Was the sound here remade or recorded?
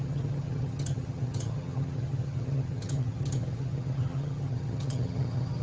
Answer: remade